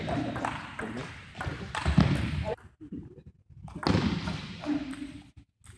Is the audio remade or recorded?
recorded